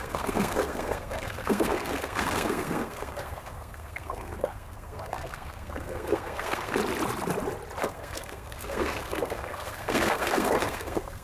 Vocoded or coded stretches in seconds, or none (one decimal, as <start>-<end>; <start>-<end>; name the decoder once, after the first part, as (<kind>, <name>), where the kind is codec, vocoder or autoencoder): 0.0-6.8 (codec, SNAC); 7.8-11.2